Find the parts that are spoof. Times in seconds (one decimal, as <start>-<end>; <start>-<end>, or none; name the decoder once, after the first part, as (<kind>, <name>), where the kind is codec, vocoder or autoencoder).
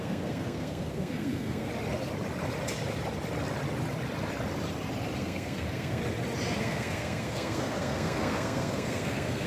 0.0-1.7 (codec, SNAC); 5.2-6.0; 6.6-9.5